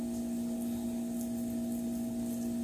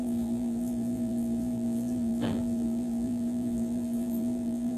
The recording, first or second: first